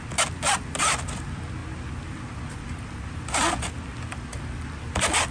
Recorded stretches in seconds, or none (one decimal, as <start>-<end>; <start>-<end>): 0.0-5.3